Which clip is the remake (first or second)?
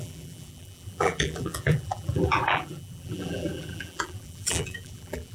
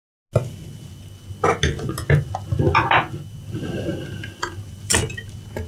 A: first